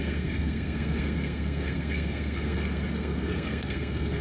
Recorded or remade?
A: remade